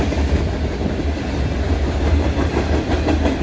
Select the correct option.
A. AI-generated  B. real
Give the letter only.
A